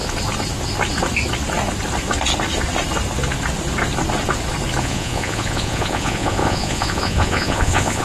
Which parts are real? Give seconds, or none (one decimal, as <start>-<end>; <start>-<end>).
0.0-4.8